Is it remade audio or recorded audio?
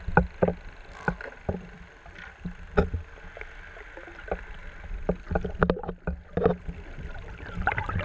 recorded